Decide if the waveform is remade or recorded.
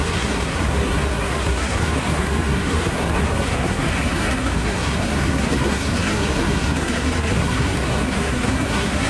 remade